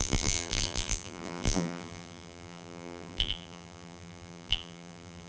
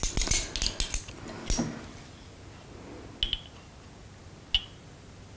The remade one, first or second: first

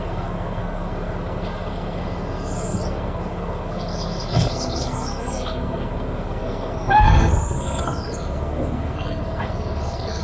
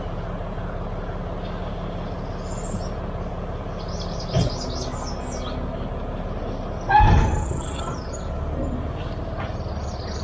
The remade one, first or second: first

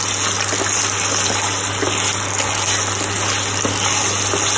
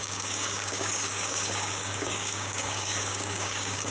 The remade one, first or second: second